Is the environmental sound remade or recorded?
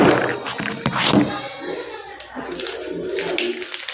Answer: recorded